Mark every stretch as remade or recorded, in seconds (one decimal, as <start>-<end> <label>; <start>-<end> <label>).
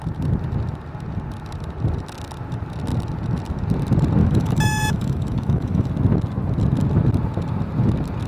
0.0-4.2 recorded; 4.2-5.9 remade; 5.9-8.3 recorded